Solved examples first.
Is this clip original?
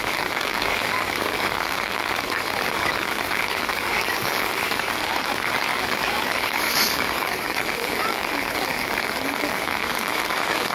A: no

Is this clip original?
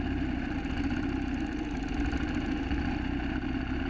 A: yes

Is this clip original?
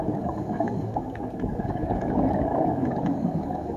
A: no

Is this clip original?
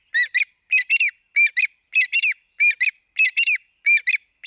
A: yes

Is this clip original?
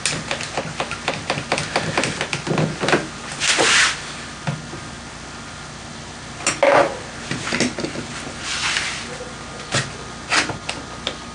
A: yes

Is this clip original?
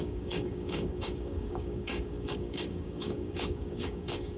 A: no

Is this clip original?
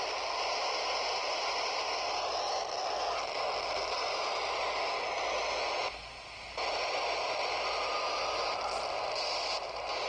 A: yes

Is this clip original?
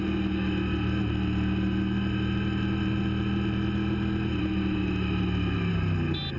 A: yes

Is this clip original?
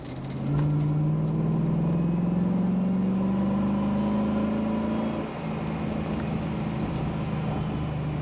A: yes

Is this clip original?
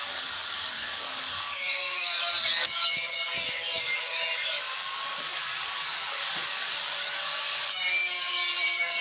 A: no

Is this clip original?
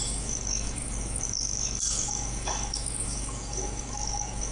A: no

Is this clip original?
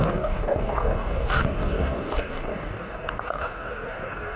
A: no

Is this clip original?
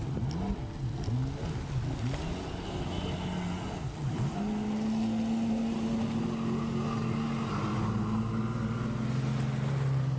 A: yes